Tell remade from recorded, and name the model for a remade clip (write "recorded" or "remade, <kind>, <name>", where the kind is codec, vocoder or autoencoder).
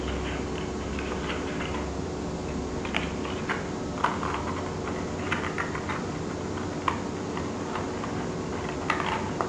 recorded